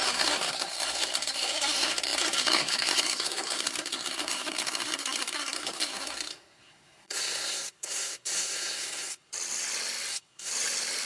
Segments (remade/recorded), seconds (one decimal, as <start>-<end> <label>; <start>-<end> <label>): 0.0-9.3 remade; 9.3-10.1 recorded; 10.1-10.5 remade; 10.5-11.1 recorded